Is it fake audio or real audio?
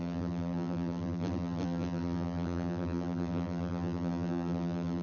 fake